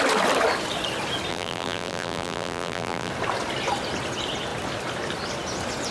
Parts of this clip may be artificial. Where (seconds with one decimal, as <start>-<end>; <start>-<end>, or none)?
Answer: 1.3-3.1